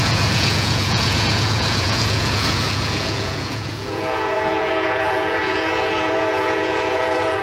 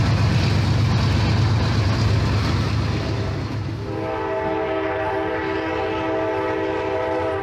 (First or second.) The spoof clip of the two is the first